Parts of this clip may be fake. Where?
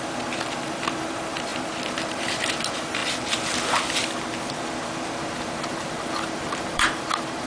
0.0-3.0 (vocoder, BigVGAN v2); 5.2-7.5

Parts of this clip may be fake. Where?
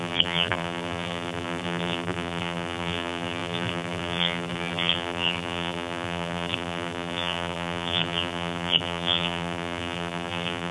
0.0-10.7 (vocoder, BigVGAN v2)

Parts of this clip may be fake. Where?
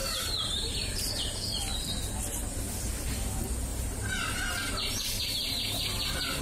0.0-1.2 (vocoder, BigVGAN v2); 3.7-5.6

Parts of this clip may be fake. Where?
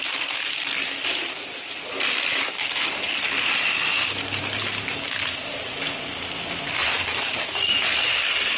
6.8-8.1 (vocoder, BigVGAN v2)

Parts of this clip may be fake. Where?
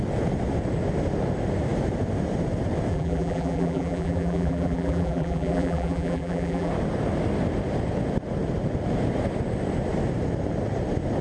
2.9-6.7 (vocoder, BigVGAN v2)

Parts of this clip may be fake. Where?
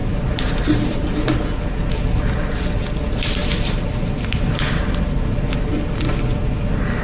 0.0-0.9 (vocoder, BigVGAN v2); 3.4-5.4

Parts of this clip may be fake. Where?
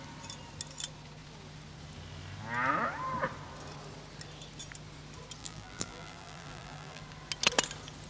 5.4-7.0 (vocoder, BigVGAN v2)